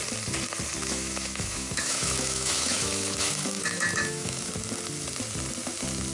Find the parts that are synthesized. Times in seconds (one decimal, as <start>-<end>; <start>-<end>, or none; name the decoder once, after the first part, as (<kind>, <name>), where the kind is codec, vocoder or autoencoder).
0.8-4.5 (autoencoder, DAC-VAE)